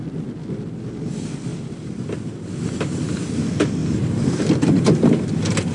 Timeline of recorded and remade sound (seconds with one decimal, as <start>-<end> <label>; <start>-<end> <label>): 0.0-1.5 recorded; 1.5-3.3 remade; 3.3-3.8 recorded; 3.8-4.4 remade; 4.4-5.7 recorded